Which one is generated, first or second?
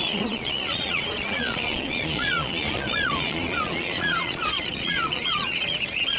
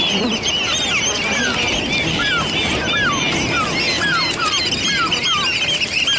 first